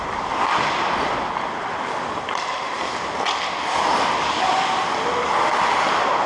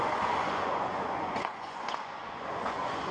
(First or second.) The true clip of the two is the first